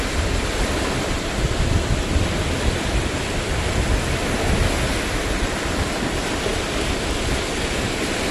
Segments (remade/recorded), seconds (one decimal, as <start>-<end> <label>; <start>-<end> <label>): 0.0-8.3 recorded